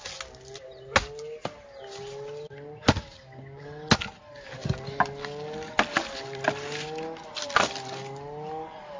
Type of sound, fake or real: real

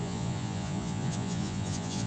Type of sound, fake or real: fake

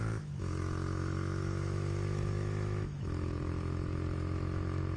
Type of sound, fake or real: fake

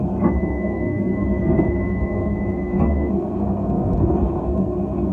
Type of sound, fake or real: fake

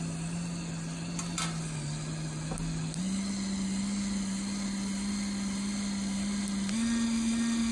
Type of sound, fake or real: real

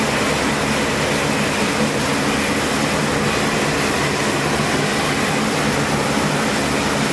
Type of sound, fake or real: real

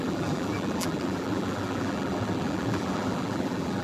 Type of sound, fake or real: fake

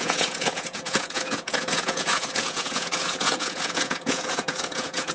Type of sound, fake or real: fake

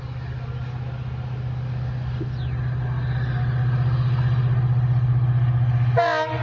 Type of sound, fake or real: real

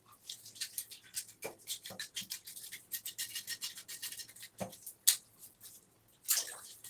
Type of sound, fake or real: real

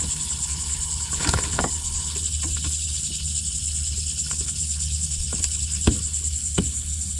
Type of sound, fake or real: fake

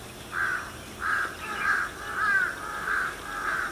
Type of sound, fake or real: real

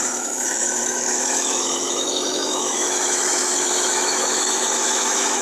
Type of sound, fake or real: fake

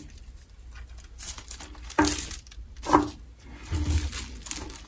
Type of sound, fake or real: real